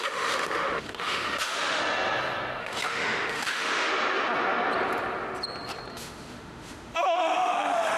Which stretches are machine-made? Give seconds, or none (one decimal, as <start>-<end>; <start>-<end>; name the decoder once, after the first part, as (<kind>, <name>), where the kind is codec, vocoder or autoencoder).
0.0-1.8 (autoencoder, DAC-VAE); 2.6-3.9; 5.9-8.0